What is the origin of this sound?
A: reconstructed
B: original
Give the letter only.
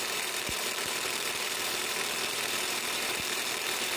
A